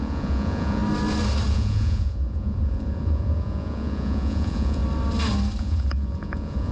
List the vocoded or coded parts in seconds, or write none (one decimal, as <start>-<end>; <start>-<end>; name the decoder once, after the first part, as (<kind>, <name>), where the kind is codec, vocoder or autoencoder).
0.0-0.8 (vocoder, Vocos); 1.5-4.8; 5.6-6.7